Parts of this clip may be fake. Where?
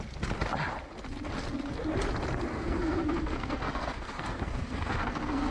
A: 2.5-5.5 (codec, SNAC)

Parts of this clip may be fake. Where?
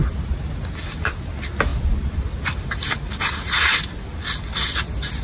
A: none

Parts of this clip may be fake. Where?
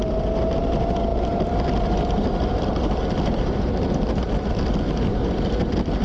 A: 1.1-4.7 (vocoder, BigVGAN v2)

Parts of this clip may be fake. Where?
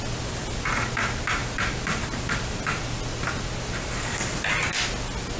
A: none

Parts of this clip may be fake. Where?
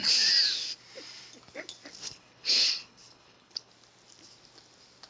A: 2.0-3.7 (codec, HILCodec)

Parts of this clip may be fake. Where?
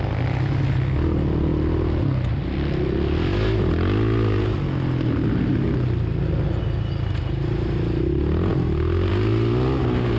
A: none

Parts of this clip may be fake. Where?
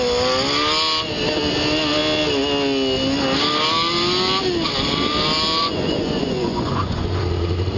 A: 5.6-7.2 (vocoder, Vocos)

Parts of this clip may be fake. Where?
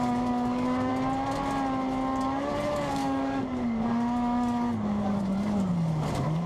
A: 0.0-0.9 (codec, DAC); 2.2-6.5